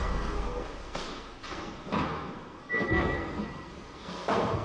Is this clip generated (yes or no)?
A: yes